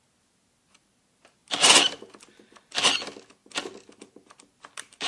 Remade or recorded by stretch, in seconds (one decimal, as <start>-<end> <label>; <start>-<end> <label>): 0.0-5.1 recorded